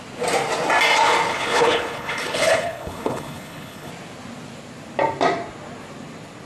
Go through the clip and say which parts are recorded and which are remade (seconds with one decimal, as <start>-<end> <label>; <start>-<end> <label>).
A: 0.0-1.3 recorded; 1.3-3.9 remade; 3.9-6.5 recorded